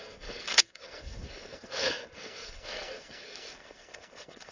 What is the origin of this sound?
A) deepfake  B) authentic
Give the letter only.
A